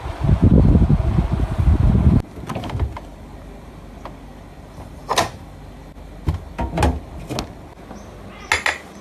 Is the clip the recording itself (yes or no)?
yes